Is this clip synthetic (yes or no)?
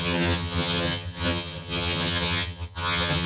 yes